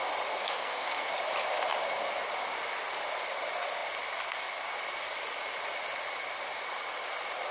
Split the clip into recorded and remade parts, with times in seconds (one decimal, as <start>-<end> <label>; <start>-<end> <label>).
0.0-0.4 recorded; 0.4-1.1 remade; 1.1-7.5 recorded